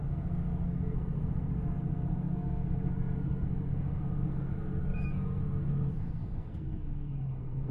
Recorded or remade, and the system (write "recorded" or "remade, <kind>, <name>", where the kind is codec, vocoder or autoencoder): remade, codec, SNAC